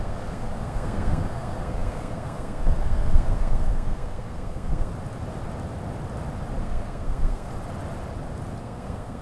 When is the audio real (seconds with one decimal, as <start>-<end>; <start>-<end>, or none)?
4.9-6.6; 7.5-8.6